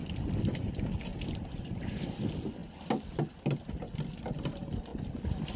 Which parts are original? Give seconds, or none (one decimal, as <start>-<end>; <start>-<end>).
0.7-1.1; 2.2-4.9